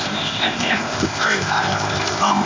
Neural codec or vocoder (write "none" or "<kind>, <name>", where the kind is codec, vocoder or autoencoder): codec, ZipCodec